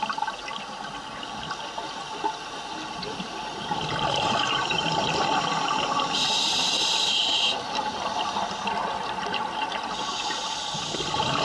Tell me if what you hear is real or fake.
real